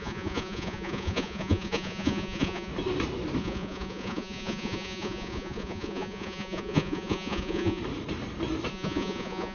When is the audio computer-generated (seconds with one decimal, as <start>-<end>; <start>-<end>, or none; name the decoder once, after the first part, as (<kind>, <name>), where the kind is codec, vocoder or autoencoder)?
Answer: 0.0-2.7 (vocoder, Vocos); 3.4-7.8; 8.7-9.5